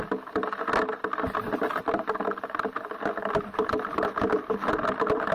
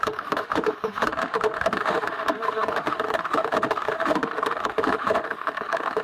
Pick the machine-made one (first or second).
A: second